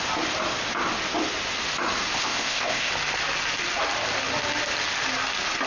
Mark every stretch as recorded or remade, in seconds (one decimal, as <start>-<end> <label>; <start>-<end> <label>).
0.0-2.2 recorded; 2.2-2.9 remade; 2.9-5.7 recorded